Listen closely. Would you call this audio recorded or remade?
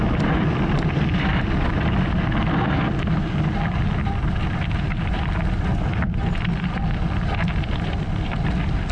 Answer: remade